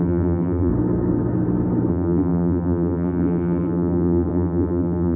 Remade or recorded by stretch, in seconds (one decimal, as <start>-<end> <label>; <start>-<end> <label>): 0.0-0.7 remade; 0.7-1.9 recorded; 1.9-5.2 remade